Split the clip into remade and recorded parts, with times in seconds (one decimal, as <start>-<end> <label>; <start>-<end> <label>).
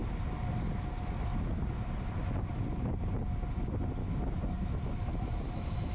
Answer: 0.0-4.0 recorded; 4.0-5.9 remade